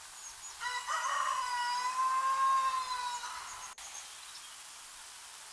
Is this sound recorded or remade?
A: recorded